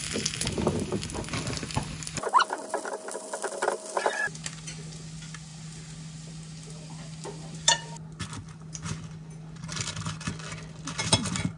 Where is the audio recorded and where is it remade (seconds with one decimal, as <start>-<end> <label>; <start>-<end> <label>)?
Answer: 0.0-11.6 recorded